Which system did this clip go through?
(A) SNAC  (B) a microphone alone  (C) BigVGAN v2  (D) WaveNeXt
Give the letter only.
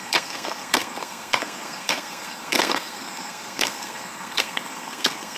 A